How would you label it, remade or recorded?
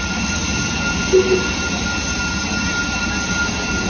recorded